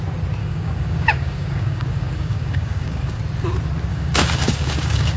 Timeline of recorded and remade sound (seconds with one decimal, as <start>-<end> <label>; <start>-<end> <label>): 0.0-0.4 recorded; 0.4-3.2 remade; 3.2-3.9 recorded; 3.9-5.2 remade